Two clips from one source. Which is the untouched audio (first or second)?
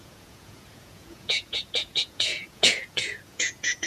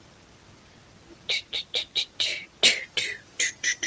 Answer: second